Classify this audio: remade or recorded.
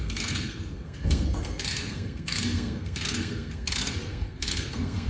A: remade